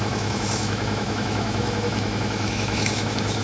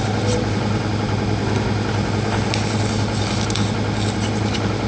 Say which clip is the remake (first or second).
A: first